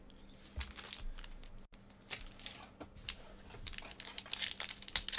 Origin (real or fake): real